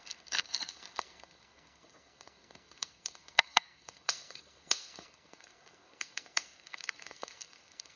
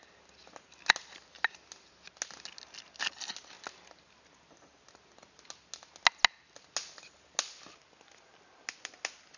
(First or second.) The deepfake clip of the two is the first